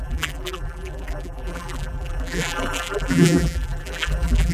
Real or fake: fake